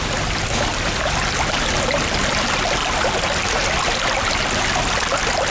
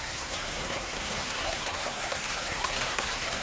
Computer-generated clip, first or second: second